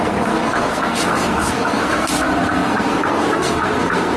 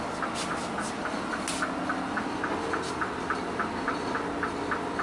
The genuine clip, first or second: second